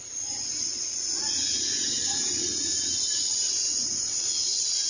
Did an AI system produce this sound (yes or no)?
yes